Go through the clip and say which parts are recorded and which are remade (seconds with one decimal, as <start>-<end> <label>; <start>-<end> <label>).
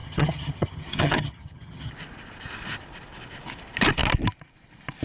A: 0.0-1.9 remade; 1.9-5.0 recorded